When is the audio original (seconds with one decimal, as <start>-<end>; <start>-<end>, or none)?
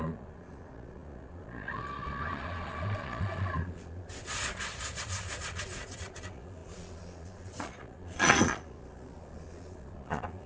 none